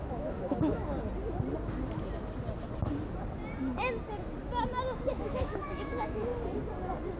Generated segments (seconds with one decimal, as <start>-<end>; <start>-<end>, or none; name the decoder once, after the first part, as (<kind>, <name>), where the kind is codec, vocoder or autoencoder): 0.0-0.8 (autoencoder, DAC-VAE); 5.1-6.3